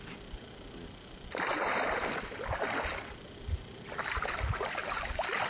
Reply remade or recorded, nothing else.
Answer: recorded